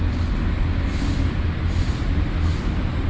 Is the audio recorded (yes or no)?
yes